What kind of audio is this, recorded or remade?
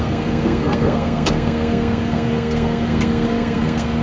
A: remade